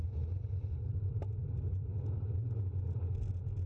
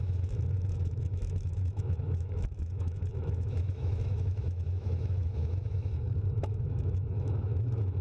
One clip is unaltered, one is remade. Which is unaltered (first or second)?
first